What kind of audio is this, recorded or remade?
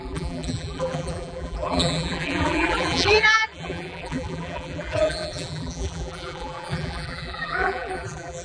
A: remade